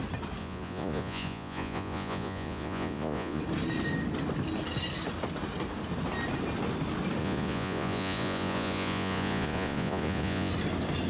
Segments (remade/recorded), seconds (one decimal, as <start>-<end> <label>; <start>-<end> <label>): 0.0-0.4 recorded; 0.4-3.4 remade; 3.4-7.2 recorded; 7.2-10.5 remade; 10.5-11.1 recorded